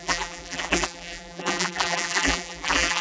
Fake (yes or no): yes